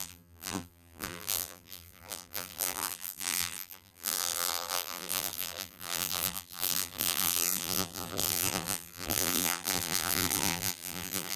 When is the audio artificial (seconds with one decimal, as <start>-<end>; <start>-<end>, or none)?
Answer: 0.0-11.4